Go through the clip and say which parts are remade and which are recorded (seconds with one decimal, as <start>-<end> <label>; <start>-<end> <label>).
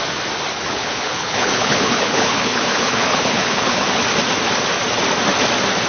0.0-0.5 recorded; 0.5-4.0 remade; 4.0-5.9 recorded